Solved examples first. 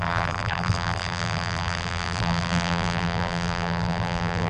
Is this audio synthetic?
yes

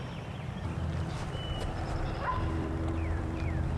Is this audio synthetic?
yes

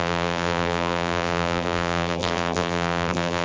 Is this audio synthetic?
yes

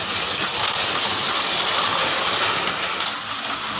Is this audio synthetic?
no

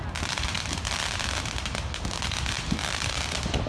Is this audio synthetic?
yes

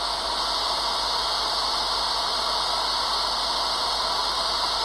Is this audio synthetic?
no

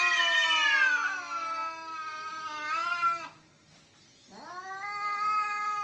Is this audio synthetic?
no